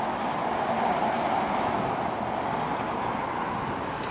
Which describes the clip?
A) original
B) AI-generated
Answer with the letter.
A